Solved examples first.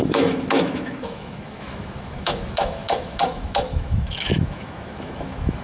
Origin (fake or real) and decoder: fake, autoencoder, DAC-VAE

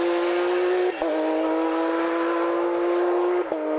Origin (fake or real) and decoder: real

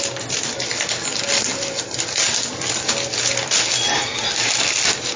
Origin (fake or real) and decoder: real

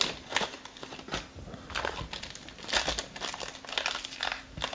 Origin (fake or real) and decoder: real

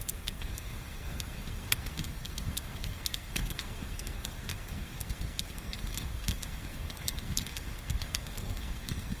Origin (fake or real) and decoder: fake, codec, SNAC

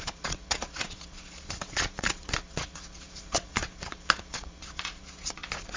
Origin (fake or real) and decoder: fake, vocoder, Vocos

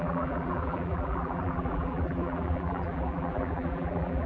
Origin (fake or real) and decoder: fake, vocoder, BigVGAN v2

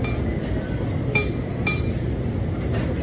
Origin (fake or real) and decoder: real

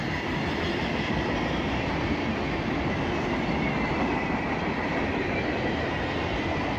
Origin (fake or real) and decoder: fake, vocoder, BigVGAN v2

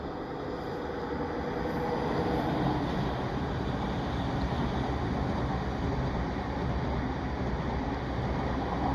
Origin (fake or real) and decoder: real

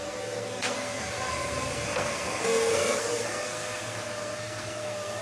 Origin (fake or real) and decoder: fake, codec, SNAC